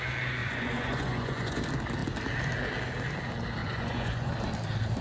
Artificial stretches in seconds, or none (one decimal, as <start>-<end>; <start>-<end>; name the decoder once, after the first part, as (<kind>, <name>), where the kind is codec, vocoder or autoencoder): 0.4-1.6 (vocoder, Vocos); 3.6-4.3